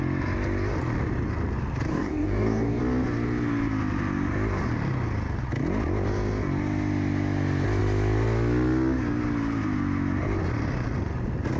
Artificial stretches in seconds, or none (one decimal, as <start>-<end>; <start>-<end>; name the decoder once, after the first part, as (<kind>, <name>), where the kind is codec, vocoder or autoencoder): 1.9-2.8 (codec, DAC)